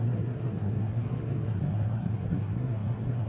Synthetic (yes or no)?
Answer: yes